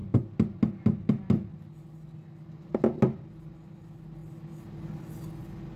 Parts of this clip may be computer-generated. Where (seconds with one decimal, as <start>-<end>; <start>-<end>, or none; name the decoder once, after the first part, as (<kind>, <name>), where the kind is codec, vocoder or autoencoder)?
none